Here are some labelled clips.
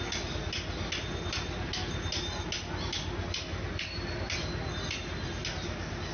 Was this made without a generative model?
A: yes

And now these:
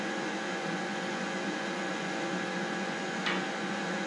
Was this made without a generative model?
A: no